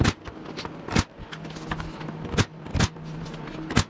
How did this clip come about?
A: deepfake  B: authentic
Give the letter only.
B